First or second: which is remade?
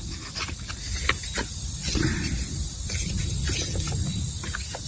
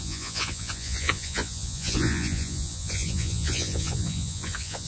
second